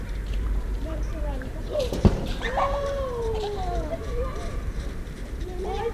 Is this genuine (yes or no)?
no